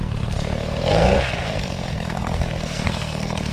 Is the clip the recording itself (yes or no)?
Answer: no